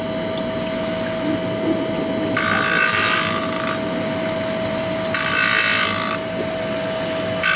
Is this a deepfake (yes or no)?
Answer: no